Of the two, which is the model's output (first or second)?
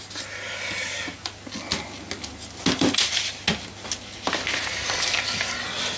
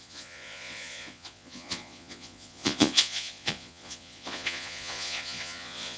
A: second